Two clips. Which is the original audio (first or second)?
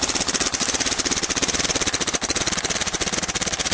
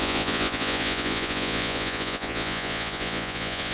first